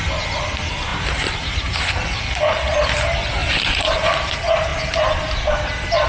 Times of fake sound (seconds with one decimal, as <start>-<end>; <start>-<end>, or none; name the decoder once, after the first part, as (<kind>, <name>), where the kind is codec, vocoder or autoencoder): 0.9-1.8 (vocoder, BigVGAN v2); 3.4-4.3